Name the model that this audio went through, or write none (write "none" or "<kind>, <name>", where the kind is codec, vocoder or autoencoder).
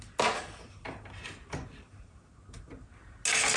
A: none